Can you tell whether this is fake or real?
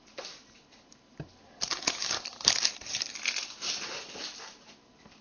real